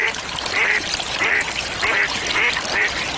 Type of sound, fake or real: fake